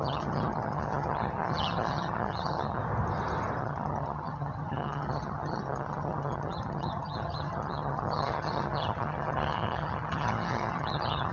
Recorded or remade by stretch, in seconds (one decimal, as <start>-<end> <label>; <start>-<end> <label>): 0.0-2.8 remade; 2.8-3.6 recorded; 3.6-11.3 remade